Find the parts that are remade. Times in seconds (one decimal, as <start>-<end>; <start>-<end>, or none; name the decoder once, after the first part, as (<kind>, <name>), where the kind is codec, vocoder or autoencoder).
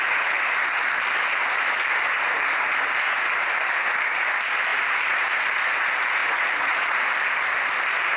none